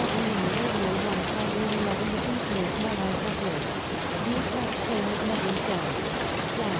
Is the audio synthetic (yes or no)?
no